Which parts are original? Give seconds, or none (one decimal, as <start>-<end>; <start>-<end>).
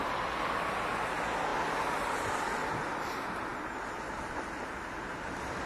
0.0-5.7